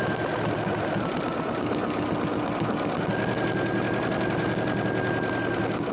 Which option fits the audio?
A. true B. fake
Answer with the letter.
A